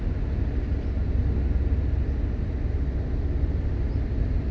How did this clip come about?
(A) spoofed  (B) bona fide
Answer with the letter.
B